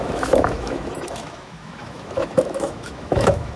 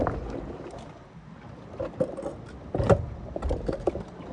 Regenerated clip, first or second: first